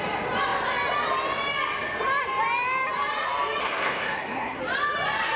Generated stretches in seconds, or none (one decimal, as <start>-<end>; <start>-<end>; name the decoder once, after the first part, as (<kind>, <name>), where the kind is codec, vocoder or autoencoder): 3.6-4.6 (codec, SNAC)